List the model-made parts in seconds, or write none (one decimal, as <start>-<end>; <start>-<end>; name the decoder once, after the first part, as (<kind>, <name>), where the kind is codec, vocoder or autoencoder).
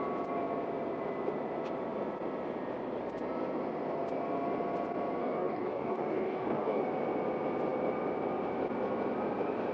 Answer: 5.2-6.8 (codec, DAC)